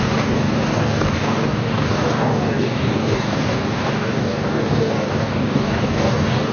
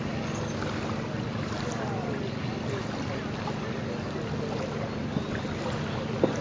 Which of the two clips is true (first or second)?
second